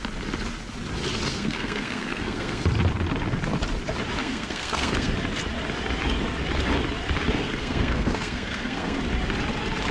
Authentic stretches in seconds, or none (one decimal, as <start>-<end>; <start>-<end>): 0.0-1.3; 2.6-4.2; 5.1-7.3; 9.0-9.9